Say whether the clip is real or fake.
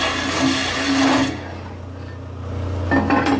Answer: real